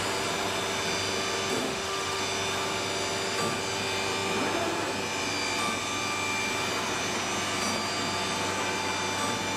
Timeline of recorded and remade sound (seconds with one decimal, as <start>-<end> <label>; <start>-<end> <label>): 0.0-1.6 recorded; 1.6-2.2 remade; 2.2-9.6 recorded